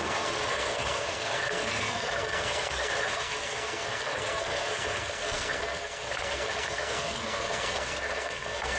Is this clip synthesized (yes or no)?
yes